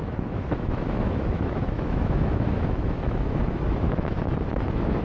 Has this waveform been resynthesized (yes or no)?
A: yes